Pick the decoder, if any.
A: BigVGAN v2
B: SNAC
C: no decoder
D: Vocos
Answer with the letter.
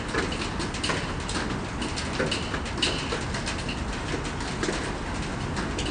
C